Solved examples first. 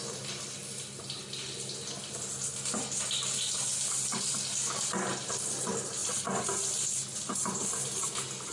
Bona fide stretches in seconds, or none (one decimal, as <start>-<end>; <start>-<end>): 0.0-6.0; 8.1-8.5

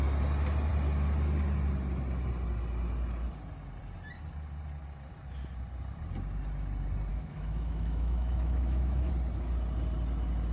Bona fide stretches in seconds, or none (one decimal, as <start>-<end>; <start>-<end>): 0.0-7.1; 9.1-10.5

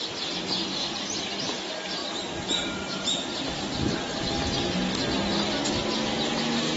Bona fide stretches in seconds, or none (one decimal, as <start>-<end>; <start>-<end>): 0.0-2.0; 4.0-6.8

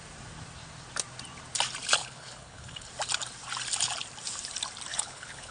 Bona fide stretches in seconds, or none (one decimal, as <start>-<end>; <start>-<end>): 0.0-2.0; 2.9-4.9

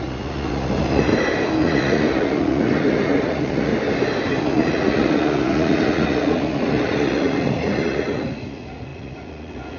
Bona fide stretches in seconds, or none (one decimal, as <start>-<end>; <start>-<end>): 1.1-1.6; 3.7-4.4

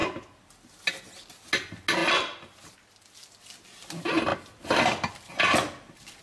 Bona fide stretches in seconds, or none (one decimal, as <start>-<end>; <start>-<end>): 0.0-4.3

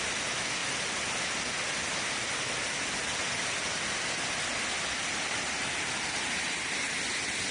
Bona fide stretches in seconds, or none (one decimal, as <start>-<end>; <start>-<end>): 0.0-0.6; 1.1-7.5